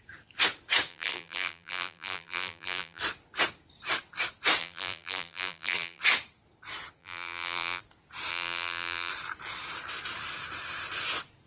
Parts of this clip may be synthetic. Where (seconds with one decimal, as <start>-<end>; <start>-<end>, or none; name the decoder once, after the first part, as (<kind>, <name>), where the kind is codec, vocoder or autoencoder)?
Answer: 0.9-3.0 (vocoder, BigVGAN v2); 4.6-6.0; 7.0-7.8; 8.3-9.1